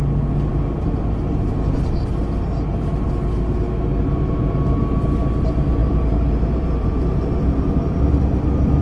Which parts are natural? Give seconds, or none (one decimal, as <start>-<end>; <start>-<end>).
0.0-0.5; 2.1-3.9; 4.8-5.8; 7.7-8.8